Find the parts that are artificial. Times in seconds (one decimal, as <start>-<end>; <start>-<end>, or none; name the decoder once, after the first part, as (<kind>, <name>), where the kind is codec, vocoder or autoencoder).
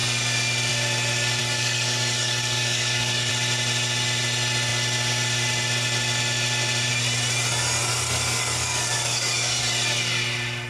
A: 1.4-3.3 (codec, DAC); 7.9-9.6